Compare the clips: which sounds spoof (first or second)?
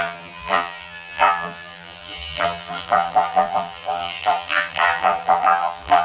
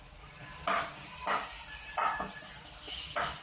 first